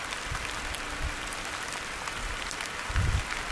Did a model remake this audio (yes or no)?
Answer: no